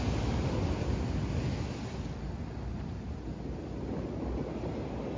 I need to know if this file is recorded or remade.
recorded